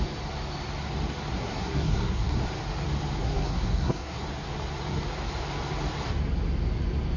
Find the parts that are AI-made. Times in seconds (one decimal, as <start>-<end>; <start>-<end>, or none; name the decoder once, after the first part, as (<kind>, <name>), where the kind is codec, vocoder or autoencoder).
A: 1.3-2.4 (codec, SNAC); 3.2-4.2